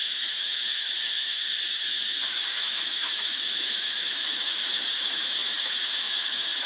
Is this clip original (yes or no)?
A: no